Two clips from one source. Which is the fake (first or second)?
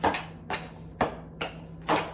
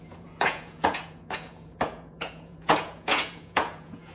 second